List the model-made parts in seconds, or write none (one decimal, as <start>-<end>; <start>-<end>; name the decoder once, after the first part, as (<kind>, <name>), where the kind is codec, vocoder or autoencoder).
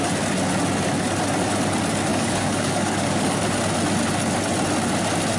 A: 2.1-3.4 (codec, DAC)